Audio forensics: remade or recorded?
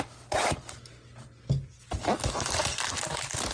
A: recorded